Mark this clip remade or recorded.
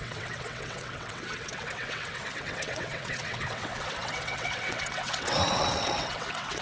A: remade